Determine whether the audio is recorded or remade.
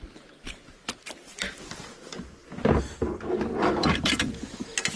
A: recorded